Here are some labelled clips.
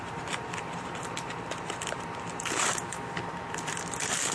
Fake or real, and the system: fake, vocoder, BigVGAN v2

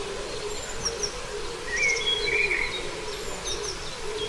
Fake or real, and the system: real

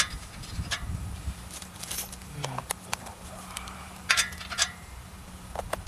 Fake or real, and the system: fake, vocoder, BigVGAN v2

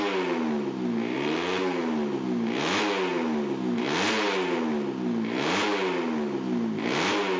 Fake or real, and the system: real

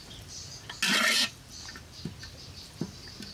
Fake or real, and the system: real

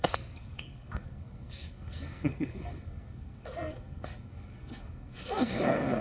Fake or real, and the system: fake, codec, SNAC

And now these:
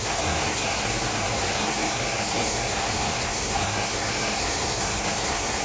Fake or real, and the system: fake, codec, SNAC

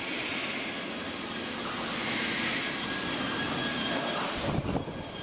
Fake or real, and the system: fake, vocoder, BigVGAN v2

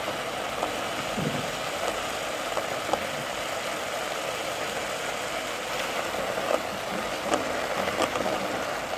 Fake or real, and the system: real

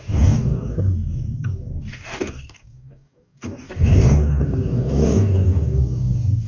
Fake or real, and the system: fake, codec, DAC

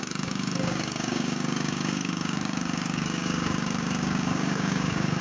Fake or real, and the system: fake, codec, DAC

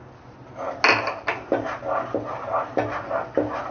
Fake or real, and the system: real